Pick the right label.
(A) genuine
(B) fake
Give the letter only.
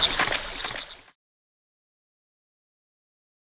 A